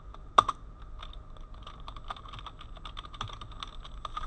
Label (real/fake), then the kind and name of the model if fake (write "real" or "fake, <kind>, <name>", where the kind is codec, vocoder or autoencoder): real